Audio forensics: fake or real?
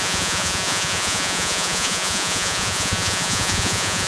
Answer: fake